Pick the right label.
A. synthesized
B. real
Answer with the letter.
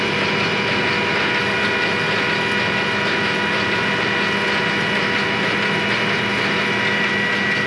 B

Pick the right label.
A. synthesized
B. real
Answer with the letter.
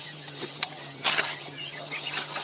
A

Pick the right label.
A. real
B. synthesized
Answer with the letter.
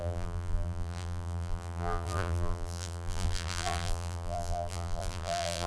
B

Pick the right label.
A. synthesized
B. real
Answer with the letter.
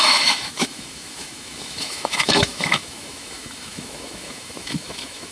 A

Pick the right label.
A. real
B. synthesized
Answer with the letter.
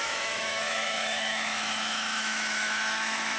B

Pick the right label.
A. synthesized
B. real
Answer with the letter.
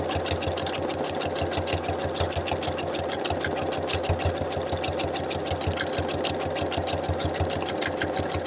B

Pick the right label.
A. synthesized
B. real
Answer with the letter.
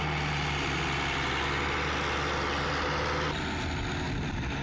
B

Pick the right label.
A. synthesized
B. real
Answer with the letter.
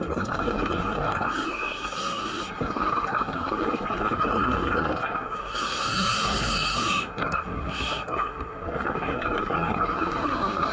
A